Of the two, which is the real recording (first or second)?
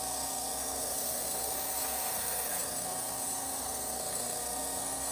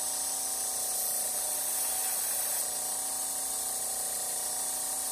second